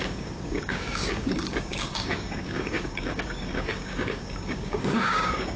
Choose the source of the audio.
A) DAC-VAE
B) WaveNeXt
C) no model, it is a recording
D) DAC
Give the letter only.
D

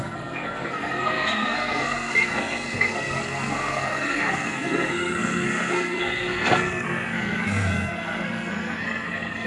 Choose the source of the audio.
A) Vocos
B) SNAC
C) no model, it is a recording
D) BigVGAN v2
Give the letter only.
B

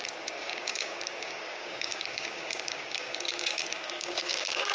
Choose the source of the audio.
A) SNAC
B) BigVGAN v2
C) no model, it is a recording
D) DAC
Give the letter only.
D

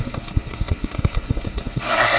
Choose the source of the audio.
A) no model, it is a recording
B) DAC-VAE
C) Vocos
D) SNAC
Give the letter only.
D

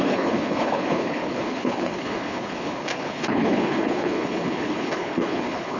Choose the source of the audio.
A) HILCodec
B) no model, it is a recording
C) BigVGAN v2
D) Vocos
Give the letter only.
A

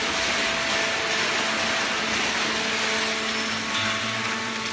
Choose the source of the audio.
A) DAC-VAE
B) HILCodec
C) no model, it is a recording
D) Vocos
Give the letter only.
C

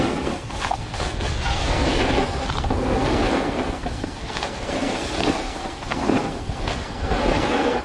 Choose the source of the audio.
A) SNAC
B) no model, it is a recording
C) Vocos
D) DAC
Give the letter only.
A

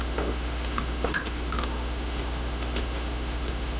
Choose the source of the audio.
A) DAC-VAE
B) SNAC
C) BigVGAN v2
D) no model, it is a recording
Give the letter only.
A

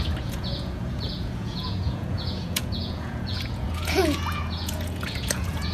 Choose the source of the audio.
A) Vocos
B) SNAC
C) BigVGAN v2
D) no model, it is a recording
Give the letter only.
A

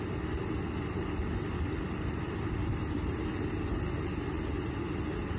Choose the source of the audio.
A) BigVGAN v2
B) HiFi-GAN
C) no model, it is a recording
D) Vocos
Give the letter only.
C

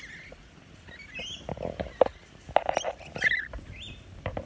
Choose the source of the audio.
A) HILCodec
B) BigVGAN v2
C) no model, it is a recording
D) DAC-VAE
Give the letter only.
C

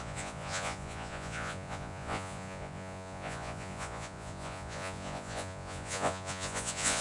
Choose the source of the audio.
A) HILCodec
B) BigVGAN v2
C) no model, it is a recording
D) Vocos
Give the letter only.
D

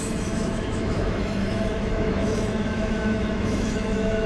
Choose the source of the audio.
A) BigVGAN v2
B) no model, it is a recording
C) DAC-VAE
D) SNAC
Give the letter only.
C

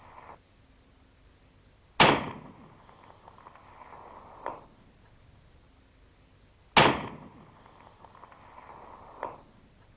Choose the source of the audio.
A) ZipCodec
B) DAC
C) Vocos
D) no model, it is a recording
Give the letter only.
D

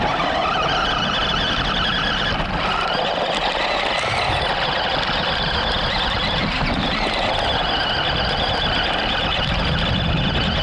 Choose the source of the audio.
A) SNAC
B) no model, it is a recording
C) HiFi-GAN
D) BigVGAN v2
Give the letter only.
B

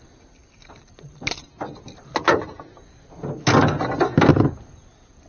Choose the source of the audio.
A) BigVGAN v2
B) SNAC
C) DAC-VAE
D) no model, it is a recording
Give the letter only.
D